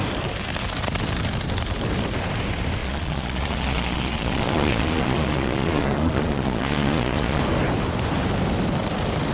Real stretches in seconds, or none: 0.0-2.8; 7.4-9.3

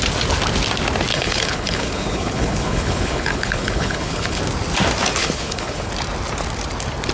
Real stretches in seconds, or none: 0.0-1.1; 4.4-5.2; 5.9-7.1

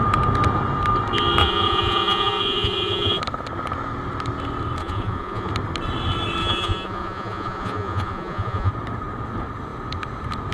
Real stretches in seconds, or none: 0.0-1.4; 3.2-4.8; 5.5-6.4; 8.7-10.5